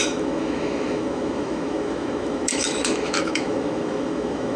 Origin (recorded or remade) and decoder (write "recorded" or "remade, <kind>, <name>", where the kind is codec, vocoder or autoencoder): remade, autoencoder, DAC-VAE